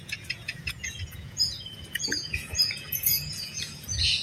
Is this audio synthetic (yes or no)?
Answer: yes